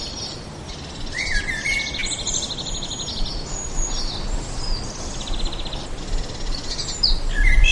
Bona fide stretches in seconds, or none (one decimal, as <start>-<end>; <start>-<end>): 0.0-7.7